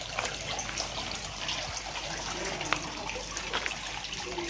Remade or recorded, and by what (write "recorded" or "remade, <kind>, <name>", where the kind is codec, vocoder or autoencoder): recorded